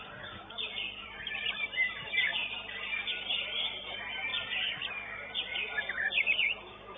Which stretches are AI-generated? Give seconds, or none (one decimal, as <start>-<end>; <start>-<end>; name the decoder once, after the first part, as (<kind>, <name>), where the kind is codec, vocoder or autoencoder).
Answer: 0.0-5.5 (vocoder, BigVGAN v2); 6.3-7.0